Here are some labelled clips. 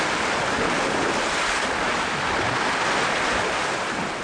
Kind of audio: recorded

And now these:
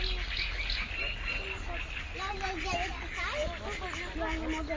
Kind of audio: recorded